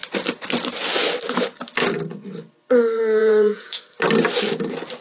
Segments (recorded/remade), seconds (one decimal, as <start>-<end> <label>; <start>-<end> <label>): 0.0-3.2 recorded; 3.2-3.8 remade; 3.8-5.0 recorded